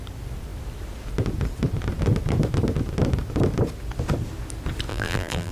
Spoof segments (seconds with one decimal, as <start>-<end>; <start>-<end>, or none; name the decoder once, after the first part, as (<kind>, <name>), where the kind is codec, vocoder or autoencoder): 4.9-5.5 (vocoder, BigVGAN v2)